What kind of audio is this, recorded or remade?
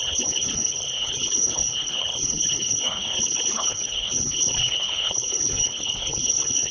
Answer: remade